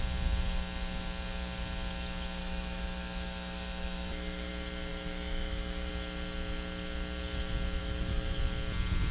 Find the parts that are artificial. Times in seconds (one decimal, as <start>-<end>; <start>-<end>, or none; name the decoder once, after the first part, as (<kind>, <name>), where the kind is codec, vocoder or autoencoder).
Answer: 2.4-4.5 (autoencoder, DAC-VAE); 4.9-5.9; 7.8-8.4